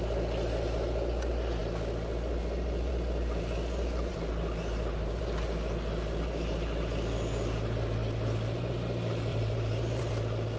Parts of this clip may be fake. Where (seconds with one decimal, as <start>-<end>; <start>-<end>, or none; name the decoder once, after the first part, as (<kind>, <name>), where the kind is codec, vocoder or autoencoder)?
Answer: 4.1-5.2 (vocoder, BigVGAN v2); 9.3-10.1